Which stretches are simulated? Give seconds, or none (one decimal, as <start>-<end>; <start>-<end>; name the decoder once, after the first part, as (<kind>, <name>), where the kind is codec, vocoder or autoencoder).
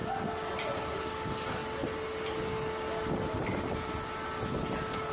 none